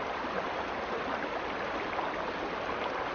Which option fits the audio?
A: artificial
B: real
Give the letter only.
B